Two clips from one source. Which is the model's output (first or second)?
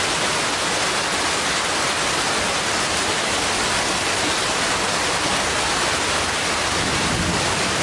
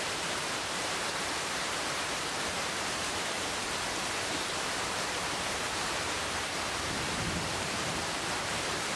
second